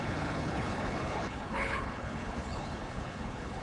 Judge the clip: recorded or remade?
remade